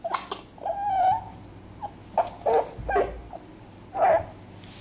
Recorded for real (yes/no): yes